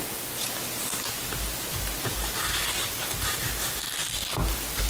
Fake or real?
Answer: real